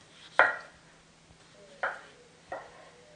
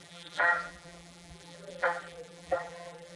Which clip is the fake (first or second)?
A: second